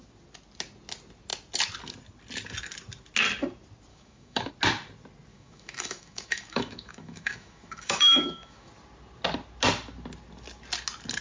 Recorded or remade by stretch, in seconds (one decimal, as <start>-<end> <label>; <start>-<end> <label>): 0.0-3.9 recorded; 3.9-4.5 remade; 4.5-5.3 recorded; 5.3-8.7 remade; 8.7-11.2 recorded